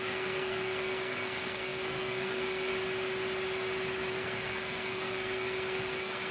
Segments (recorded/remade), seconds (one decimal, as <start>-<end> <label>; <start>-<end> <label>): 0.0-2.7 remade; 2.7-4.1 recorded; 4.1-6.3 remade